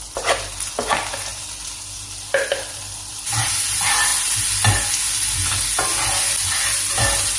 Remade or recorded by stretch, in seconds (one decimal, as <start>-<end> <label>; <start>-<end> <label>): 0.0-1.3 recorded; 1.3-3.2 remade; 3.2-7.4 recorded